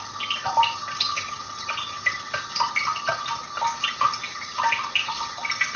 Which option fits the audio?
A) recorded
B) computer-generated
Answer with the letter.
A